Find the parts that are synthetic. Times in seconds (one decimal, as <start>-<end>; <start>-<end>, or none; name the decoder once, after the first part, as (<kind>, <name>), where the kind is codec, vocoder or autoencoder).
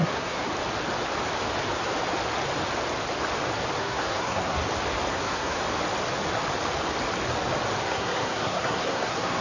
0.0-0.5 (codec, SNAC); 3.8-4.6; 5.1-5.6; 7.8-9.4